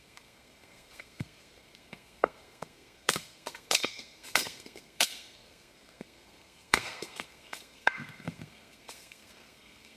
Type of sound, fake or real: fake